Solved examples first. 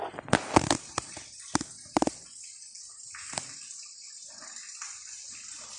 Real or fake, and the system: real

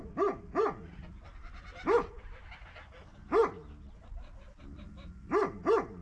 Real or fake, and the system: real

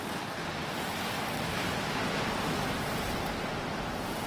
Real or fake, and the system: real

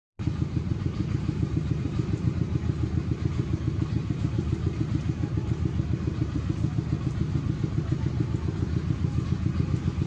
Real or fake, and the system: fake, vocoder, BigVGAN v2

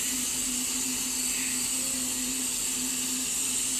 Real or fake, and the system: real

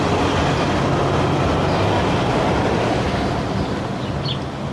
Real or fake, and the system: real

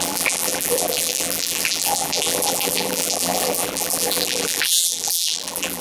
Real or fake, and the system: fake, vocoder, BigVGAN v2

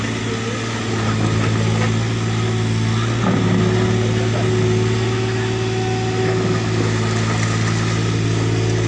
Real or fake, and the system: real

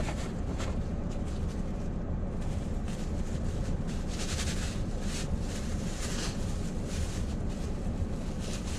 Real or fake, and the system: fake, vocoder, BigVGAN v2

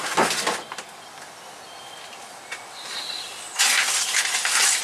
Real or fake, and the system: real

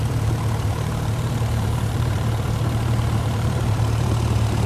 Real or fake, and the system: fake, vocoder, BigVGAN v2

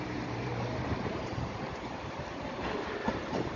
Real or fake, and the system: fake, vocoder, BigVGAN v2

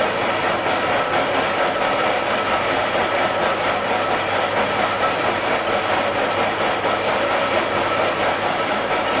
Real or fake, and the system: real